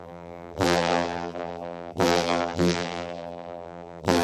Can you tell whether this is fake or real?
fake